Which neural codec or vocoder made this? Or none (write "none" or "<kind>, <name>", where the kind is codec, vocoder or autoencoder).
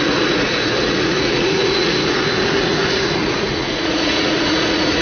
vocoder, Vocos